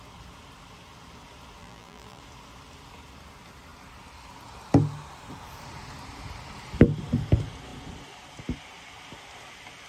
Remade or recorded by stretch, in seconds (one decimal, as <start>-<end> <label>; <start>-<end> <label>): 0.0-1.6 recorded; 1.6-2.2 remade; 2.2-9.9 recorded